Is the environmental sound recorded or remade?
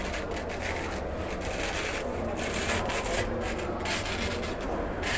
recorded